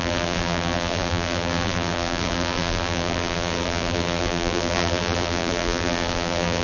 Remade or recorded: remade